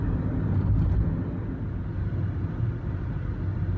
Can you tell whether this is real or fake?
real